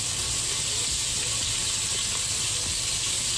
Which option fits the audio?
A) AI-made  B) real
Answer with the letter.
B